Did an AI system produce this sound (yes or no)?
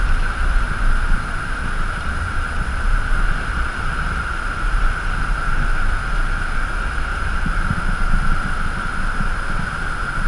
no